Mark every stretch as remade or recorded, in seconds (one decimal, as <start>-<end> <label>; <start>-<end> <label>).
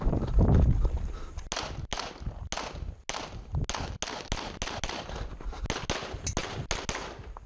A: 0.0-7.5 recorded